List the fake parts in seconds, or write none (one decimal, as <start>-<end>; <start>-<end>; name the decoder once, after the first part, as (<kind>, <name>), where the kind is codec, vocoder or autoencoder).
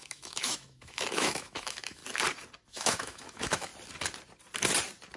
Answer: 0.0-2.0 (autoencoder, DAC-VAE); 2.7-3.7